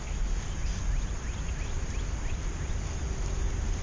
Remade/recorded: recorded